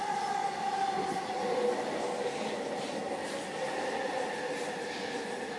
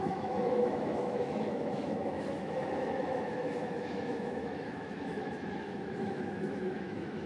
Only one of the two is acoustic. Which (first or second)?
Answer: first